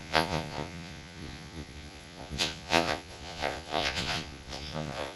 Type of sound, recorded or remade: remade